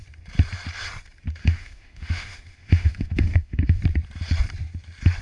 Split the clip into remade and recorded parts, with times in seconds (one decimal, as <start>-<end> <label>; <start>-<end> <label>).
0.0-1.4 recorded; 1.4-3.8 remade; 3.8-5.2 recorded